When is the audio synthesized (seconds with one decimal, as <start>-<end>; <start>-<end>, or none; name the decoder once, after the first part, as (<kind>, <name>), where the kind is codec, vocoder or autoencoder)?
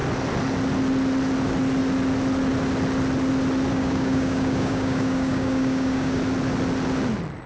3.7-6.2 (codec, DAC)